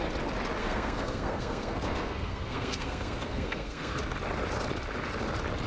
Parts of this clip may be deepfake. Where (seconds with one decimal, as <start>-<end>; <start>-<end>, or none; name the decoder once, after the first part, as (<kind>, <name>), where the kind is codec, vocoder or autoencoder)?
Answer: 0.6-4.0 (codec, SNAC)